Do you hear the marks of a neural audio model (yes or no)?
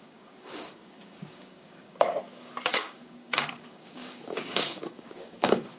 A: yes